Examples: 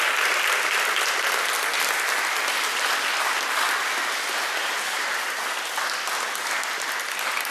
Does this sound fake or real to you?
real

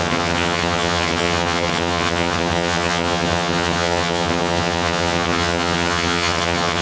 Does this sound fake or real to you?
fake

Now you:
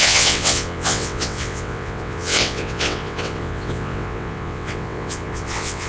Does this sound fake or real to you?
fake